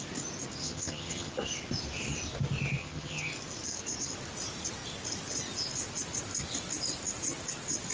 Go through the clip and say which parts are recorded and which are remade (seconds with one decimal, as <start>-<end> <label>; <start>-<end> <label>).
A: 0.0-0.6 recorded; 0.6-1.3 remade; 1.3-2.8 recorded; 2.8-3.3 remade; 3.3-7.9 recorded